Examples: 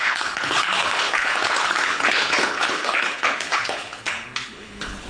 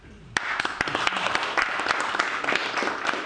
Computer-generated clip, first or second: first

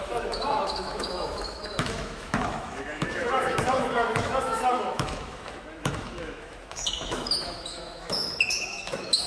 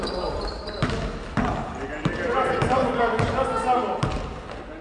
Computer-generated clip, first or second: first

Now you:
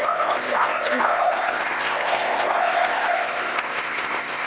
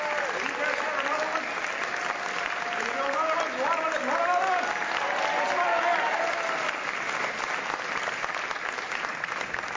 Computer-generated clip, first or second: first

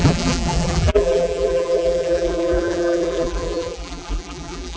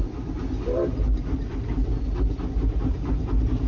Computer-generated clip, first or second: first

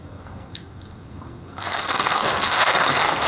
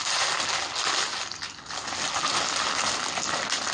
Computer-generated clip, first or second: first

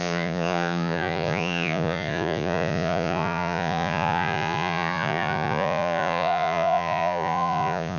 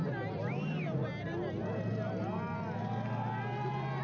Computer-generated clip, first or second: first